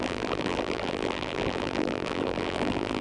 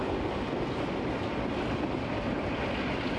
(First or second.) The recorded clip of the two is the second